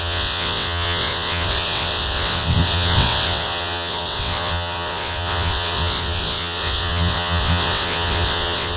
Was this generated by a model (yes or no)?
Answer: yes